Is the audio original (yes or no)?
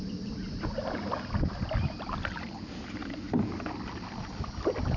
yes